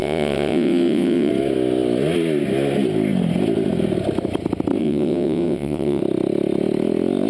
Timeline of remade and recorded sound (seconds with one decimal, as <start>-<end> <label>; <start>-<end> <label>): 0.0-1.3 remade; 1.3-4.8 recorded; 4.8-6.0 remade; 6.0-7.3 recorded